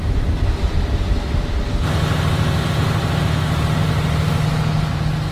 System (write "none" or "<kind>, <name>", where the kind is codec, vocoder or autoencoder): none